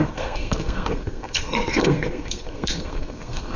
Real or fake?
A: fake